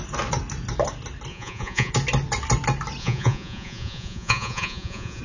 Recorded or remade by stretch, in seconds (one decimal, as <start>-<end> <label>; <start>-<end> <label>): 0.0-1.3 recorded; 1.3-1.9 remade; 1.9-3.0 recorded; 3.0-5.2 remade